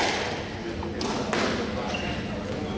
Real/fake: real